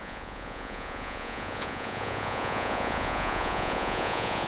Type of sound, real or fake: fake